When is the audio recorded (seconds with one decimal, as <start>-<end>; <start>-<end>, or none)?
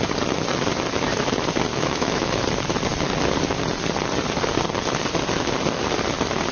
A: 0.0-1.7; 2.4-6.5